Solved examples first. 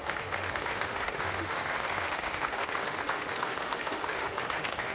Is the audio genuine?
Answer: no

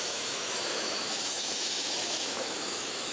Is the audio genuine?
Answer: no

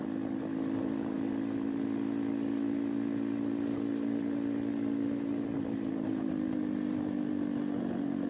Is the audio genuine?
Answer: yes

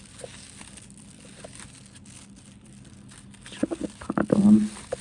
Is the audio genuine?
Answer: yes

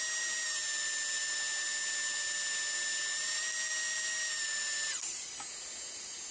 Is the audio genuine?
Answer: yes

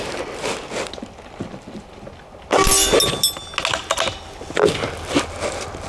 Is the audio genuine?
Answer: yes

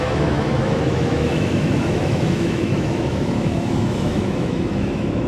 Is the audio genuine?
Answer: no